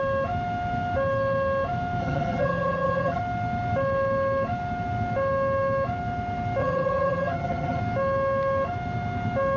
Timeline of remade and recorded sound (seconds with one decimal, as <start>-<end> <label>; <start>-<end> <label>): 0.0-2.0 recorded; 2.0-3.2 remade; 3.2-6.6 recorded; 6.6-7.8 remade; 7.8-9.6 recorded